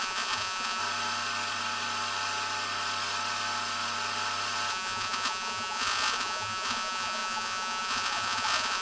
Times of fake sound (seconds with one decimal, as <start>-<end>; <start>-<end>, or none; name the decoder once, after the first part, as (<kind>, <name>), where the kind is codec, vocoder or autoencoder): 0.0-0.8 (vocoder, Vocos); 4.7-8.8